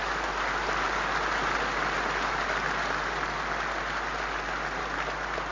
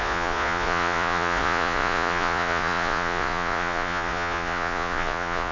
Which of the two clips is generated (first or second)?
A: second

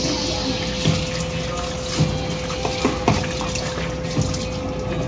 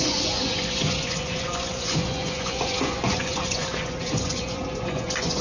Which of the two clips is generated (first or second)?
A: second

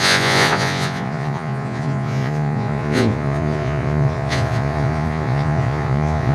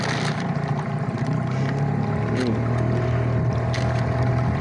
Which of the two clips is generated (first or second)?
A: first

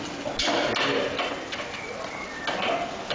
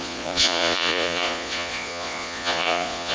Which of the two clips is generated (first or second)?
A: second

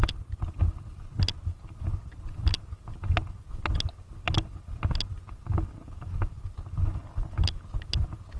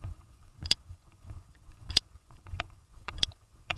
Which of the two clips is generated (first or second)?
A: second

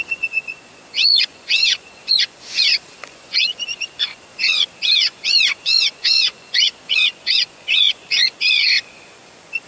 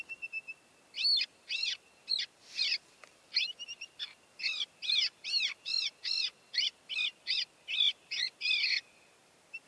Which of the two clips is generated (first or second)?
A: first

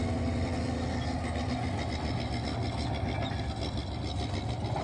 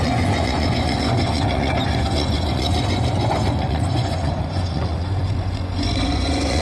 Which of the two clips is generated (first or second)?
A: second